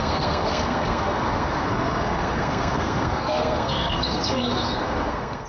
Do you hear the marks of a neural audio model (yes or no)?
yes